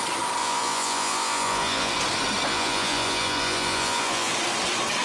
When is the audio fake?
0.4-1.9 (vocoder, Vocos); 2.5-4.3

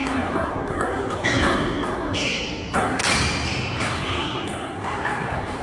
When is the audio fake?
0.0-3.0 (codec, SNAC); 3.8-5.6

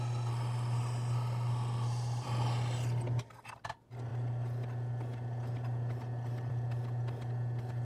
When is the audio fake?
none

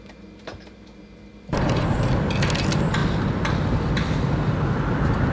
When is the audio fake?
none